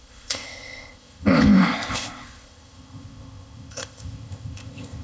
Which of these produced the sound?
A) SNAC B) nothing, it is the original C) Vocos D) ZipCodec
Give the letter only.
D